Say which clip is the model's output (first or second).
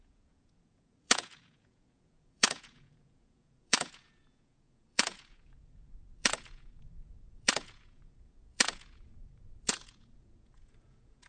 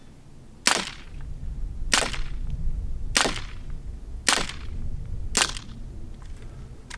first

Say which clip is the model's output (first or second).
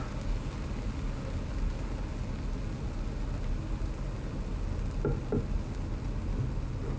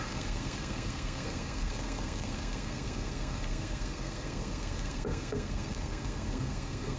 second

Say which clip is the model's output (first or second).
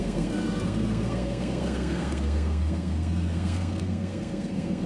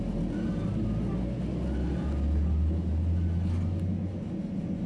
first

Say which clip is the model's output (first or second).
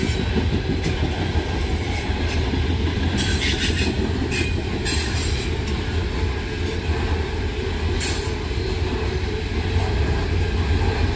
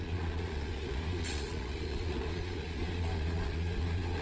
second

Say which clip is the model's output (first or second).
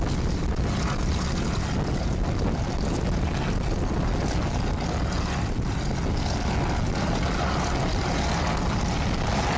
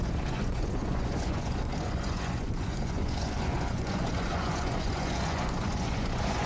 second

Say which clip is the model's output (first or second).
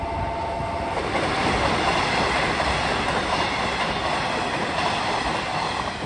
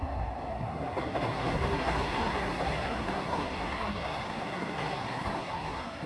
second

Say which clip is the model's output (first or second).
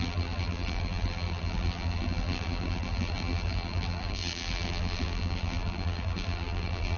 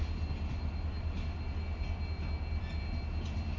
first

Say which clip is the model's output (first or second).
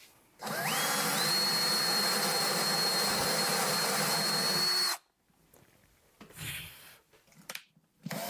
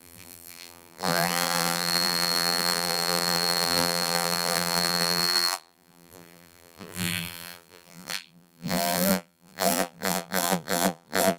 second